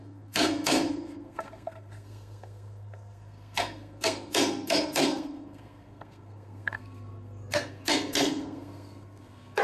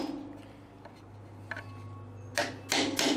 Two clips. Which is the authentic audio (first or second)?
second